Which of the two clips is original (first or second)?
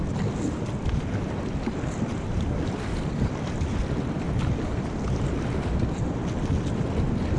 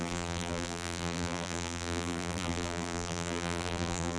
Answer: first